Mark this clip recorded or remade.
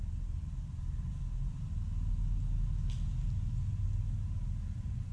recorded